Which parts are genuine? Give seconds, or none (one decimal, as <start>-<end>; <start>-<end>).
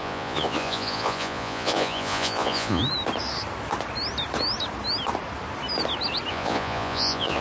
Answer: 2.8-6.3